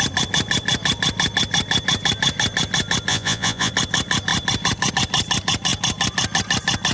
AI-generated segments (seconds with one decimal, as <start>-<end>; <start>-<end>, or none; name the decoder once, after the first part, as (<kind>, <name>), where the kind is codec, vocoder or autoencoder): 3.1-3.7 (vocoder, Vocos)